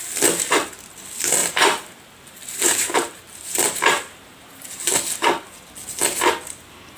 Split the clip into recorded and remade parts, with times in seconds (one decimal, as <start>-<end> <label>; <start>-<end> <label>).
0.0-1.4 recorded; 1.4-5.6 remade; 5.6-7.0 recorded

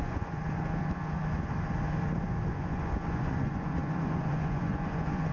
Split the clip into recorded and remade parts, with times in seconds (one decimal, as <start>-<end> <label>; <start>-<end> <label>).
0.0-0.4 remade; 0.4-2.5 recorded; 2.5-5.3 remade

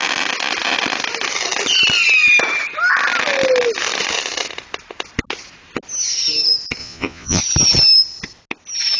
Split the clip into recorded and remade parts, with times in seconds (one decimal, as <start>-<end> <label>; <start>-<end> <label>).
0.0-6.8 recorded; 6.8-7.4 remade; 7.4-9.0 recorded

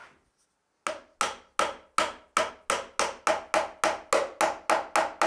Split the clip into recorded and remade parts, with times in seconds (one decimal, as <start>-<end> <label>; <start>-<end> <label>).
0.0-5.3 recorded

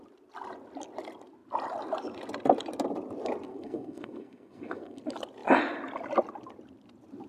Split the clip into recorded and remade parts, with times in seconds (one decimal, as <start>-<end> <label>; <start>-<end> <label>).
0.0-3.5 recorded; 3.5-5.0 remade; 5.0-7.3 recorded

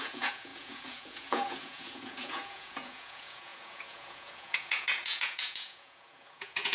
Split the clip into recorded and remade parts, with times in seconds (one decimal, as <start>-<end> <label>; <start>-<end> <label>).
0.0-6.7 remade